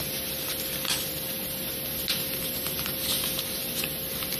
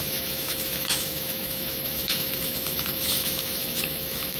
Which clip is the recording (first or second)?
first